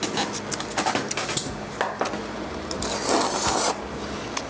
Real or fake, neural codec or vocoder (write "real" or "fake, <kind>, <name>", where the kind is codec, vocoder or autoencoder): real